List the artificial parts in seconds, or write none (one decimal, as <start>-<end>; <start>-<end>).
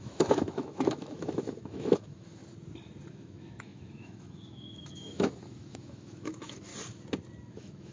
0.0-2.4; 3.1-6.7; 7.5-7.9